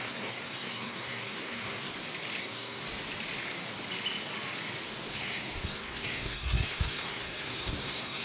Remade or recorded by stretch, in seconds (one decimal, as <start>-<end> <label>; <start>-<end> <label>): 0.0-1.9 remade; 1.9-2.4 recorded; 2.4-2.8 remade; 2.8-5.1 recorded; 5.1-8.2 remade